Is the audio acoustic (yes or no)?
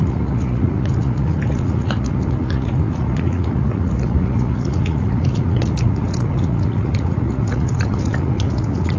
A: no